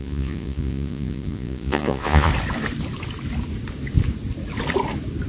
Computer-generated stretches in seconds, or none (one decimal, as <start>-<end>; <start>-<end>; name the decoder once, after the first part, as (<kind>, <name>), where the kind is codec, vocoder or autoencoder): 0.0-2.3 (vocoder, Vocos)